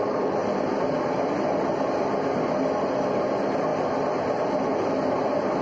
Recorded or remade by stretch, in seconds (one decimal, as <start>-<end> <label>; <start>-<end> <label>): 0.0-5.6 recorded